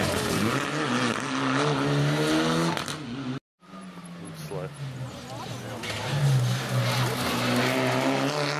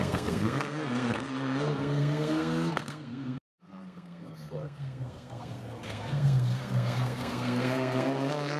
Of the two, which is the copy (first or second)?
second